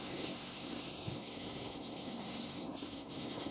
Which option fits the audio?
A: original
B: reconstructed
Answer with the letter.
B